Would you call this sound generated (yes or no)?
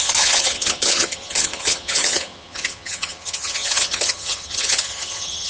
yes